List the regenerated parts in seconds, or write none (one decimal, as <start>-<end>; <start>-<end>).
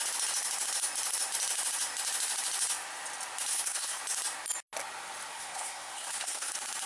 3.5-4.0; 5.3-6.5